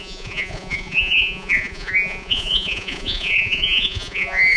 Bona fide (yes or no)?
no